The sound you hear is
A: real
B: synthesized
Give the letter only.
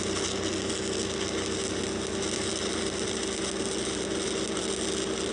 A